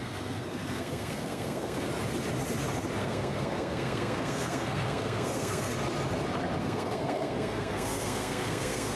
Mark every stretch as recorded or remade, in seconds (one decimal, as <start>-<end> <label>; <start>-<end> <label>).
0.0-1.9 remade; 1.9-3.0 recorded; 3.0-5.7 remade; 5.7-6.6 recorded; 6.6-9.0 remade